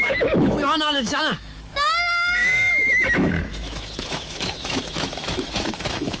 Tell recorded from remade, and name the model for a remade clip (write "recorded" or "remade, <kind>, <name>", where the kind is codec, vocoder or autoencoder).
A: remade, autoencoder, DAC-VAE